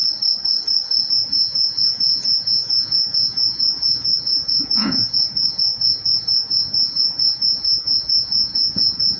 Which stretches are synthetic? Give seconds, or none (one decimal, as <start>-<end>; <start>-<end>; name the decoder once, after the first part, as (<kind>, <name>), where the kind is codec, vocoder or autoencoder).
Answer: 1.1-9.2 (vocoder, Vocos)